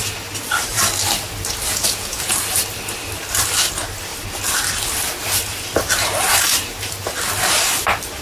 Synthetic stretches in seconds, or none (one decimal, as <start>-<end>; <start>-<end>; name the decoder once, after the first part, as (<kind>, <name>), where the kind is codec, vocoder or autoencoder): 1.7-2.2 (vocoder, Vocos)